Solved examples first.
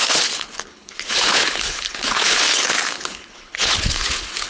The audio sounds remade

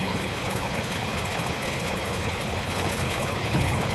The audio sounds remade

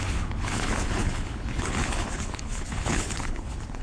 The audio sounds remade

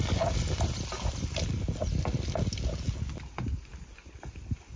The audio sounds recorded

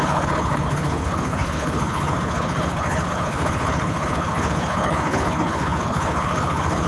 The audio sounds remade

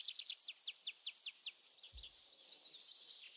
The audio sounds recorded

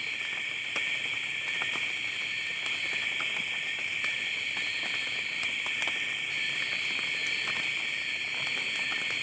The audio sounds recorded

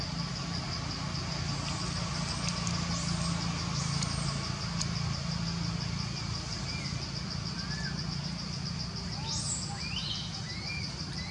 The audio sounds recorded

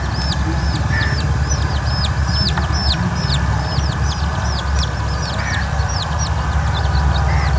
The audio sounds recorded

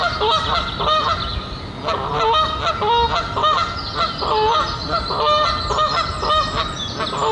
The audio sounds recorded